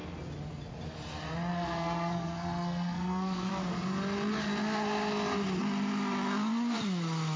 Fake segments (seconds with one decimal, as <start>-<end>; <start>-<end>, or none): 1.5-3.5